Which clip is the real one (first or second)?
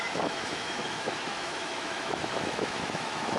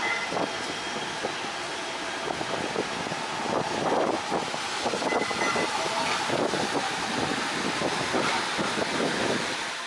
second